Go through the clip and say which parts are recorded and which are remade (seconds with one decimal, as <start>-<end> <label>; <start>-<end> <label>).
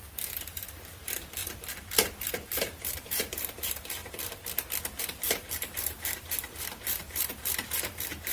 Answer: 0.0-1.4 remade; 1.4-2.2 recorded; 2.2-4.0 remade; 4.0-5.0 recorded; 5.0-8.3 remade